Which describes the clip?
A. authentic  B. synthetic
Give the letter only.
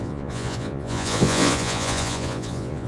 B